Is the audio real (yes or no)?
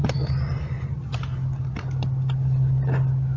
yes